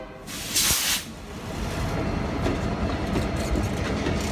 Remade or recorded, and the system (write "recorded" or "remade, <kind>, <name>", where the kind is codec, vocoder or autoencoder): recorded